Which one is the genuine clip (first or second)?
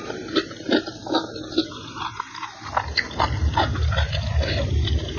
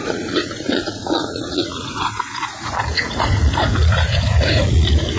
first